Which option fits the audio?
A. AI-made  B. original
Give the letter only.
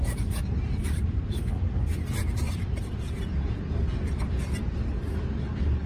A